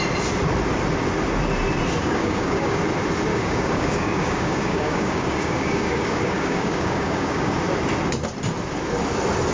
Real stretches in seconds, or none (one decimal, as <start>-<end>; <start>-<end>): 0.0-2.0; 2.8-3.3; 7.5-9.5